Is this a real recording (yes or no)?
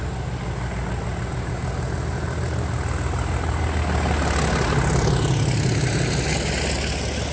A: yes